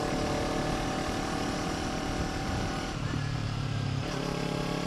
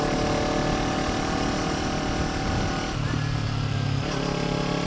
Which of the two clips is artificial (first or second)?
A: first